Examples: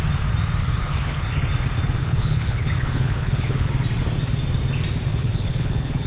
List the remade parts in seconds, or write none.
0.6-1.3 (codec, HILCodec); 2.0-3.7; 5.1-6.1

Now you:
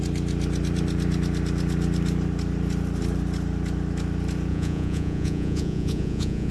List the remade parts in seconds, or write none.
4.5-6.5 (vocoder, Vocos)

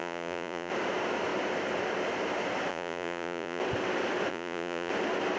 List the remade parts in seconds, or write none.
0.0-0.7 (vocoder, Vocos); 2.7-3.6; 4.3-4.9

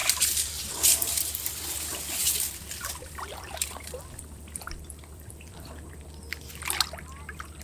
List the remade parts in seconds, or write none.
0.0-1.6 (vocoder, BigVGAN v2); 2.2-5.9

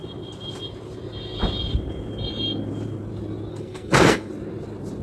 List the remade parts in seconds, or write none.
3.5-4.3 (codec, SNAC)

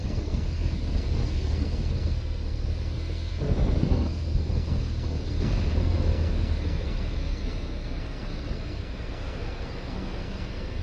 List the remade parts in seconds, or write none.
0.0-10.8 (codec, SNAC)

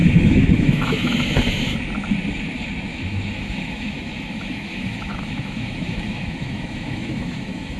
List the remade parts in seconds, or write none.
0.0-1.3 (autoencoder, DAC-VAE); 2.9-7.8